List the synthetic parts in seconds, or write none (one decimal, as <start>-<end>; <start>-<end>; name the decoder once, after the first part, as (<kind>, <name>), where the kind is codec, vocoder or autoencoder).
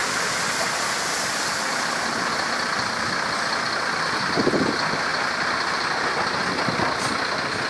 none